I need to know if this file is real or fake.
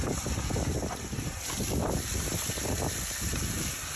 real